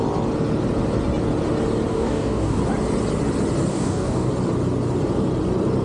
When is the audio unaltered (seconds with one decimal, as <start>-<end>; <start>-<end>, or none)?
0.0-1.9; 2.6-3.7; 4.3-5.8